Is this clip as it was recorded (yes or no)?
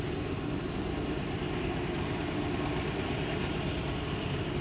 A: yes